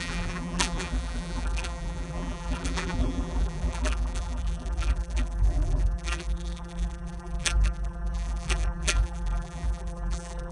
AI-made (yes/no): yes